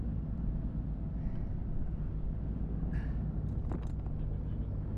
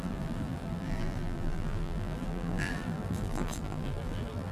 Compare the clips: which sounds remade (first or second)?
second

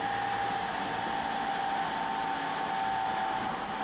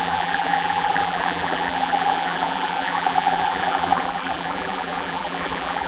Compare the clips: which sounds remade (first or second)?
second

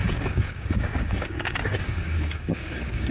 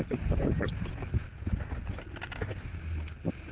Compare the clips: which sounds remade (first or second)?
first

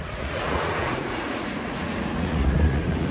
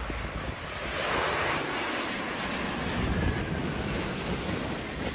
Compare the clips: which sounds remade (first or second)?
first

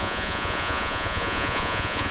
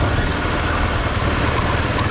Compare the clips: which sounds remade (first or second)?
first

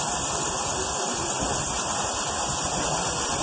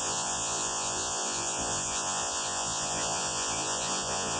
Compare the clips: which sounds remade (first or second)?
second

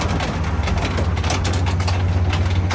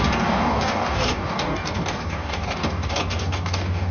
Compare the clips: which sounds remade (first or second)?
second